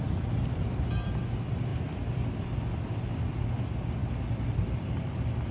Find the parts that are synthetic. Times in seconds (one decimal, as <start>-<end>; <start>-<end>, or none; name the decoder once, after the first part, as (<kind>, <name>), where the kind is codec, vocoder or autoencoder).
0.0-0.8 (vocoder, BigVGAN v2); 1.7-3.4; 4.0-5.5